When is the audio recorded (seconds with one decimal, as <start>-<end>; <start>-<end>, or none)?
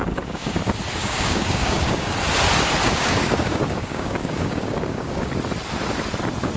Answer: 0.6-1.0; 2.1-2.8; 5.3-6.6